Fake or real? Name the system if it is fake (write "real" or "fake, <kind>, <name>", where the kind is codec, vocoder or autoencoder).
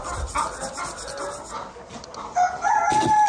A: real